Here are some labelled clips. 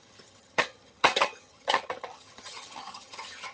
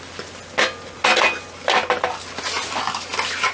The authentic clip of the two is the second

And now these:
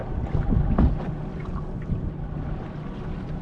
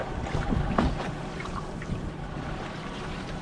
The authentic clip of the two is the first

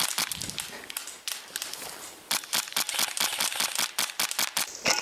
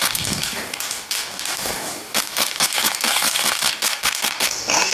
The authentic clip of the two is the first